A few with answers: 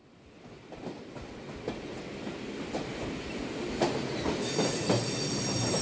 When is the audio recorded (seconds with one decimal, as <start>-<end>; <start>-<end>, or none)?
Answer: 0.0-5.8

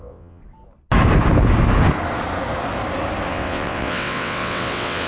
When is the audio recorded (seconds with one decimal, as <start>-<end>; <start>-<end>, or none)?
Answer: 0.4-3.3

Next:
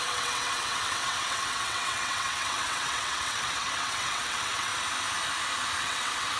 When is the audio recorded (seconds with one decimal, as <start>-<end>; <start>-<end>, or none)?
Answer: 4.7-5.8

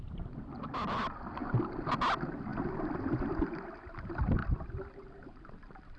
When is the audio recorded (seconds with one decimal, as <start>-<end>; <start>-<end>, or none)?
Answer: 0.0-6.0

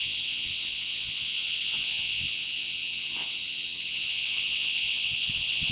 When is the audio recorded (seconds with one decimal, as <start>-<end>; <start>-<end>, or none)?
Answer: none